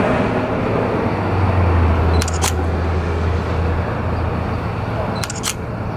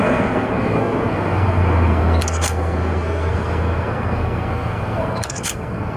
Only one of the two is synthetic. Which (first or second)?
second